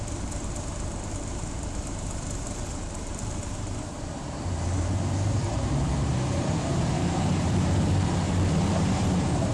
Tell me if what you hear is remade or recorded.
remade